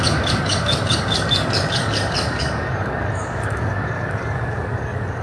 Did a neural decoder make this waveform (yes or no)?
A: yes